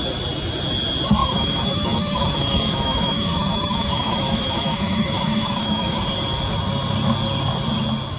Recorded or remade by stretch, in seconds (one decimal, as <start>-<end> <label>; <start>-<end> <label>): 0.0-1.2 recorded; 1.2-6.0 remade; 6.0-8.2 recorded